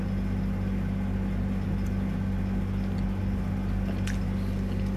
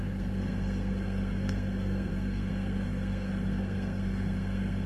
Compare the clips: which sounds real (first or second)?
first